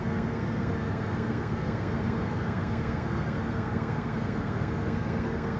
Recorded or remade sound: remade